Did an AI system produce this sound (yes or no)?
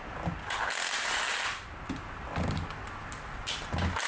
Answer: no